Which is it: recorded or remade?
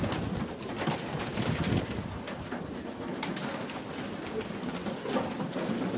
recorded